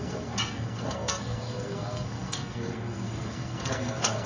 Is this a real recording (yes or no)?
no